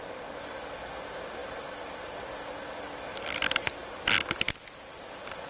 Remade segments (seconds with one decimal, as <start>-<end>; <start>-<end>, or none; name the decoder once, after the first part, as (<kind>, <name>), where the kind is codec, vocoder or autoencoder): none